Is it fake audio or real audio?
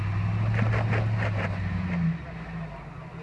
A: real